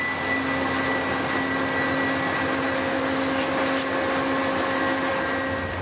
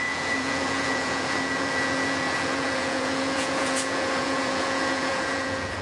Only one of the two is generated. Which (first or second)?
second